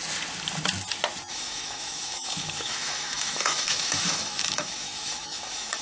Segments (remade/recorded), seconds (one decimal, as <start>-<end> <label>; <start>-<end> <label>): 0.0-1.3 recorded; 1.3-5.8 remade